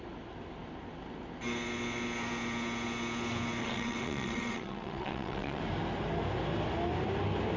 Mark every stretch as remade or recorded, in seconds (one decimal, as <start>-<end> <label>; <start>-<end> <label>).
0.0-3.6 recorded; 3.6-5.6 remade; 5.6-7.6 recorded